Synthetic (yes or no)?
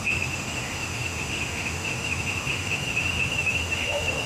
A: yes